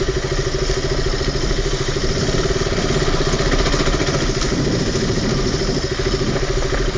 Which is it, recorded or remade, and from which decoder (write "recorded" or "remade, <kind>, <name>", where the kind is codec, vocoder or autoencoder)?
recorded